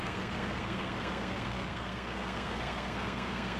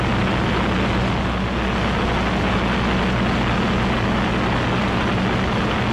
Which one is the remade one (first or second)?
first